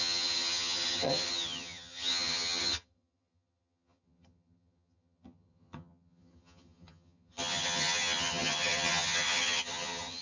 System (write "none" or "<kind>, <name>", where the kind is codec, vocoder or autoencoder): vocoder, HiFi-GAN